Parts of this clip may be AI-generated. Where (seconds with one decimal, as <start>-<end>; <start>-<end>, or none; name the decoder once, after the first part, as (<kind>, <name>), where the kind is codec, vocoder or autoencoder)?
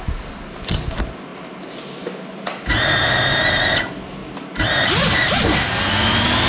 none